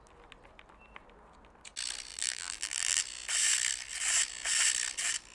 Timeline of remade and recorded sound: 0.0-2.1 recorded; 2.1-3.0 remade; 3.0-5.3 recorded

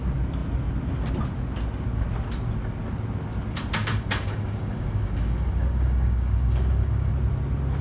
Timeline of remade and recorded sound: 0.0-3.8 recorded; 3.8-7.1 remade; 7.1-7.8 recorded

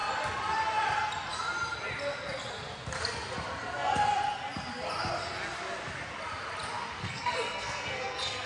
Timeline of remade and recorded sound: 0.0-7.0 recorded; 7.0-8.5 remade

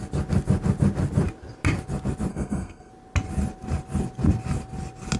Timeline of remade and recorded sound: 0.0-2.3 recorded; 2.3-2.9 remade; 2.9-5.2 recorded

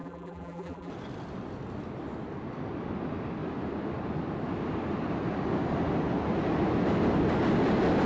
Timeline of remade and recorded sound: 0.0-0.9 remade; 0.9-8.1 recorded

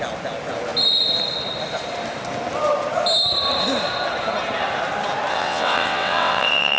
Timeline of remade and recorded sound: 0.0-5.3 recorded; 5.3-6.8 remade

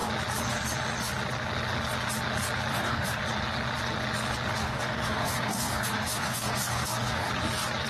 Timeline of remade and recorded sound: 0.0-2.7 recorded; 2.7-3.2 remade; 3.2-4.6 recorded; 4.6-7.3 remade; 7.3-7.9 recorded